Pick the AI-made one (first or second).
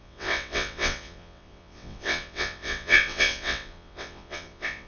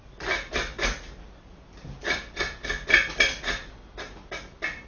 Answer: first